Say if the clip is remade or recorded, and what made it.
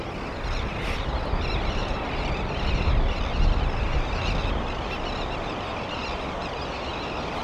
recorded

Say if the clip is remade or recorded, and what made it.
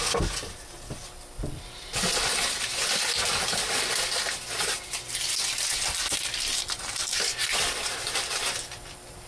recorded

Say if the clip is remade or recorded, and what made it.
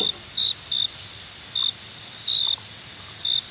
recorded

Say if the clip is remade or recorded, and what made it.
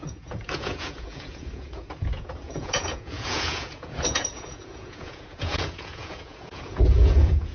remade, vocoder, Vocos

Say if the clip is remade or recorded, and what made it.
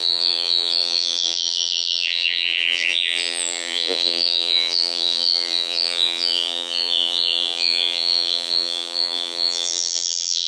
remade, vocoder, BigVGAN v2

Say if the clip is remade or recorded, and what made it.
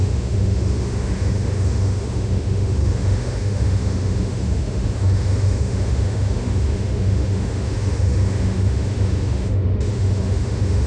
remade, autoencoder, DAC-VAE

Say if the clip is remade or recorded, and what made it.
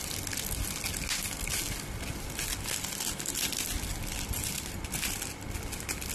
recorded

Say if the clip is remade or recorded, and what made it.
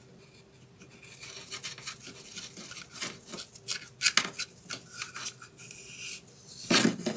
recorded